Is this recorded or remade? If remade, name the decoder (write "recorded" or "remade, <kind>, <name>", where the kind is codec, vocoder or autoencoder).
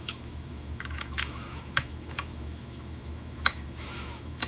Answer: remade, autoencoder, DAC-VAE